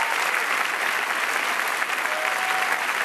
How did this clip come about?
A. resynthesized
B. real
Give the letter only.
B